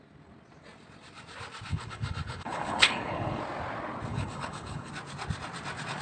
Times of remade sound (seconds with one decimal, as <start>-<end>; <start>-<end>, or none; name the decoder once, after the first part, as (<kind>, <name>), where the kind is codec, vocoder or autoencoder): 1.7-3.4 (codec, HILCodec); 4.1-4.9